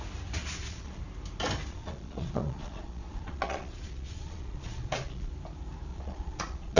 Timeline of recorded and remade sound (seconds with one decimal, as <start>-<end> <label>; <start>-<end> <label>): 0.0-0.4 recorded; 0.4-1.0 remade; 1.0-1.7 recorded; 1.7-5.3 remade; 5.3-5.9 recorded; 5.9-6.8 remade